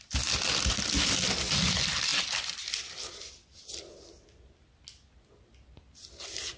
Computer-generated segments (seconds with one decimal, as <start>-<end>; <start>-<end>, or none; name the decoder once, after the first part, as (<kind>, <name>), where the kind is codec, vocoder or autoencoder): none